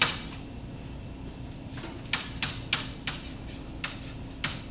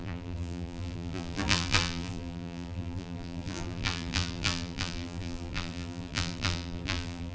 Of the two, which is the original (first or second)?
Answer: first